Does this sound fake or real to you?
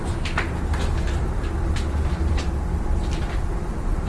real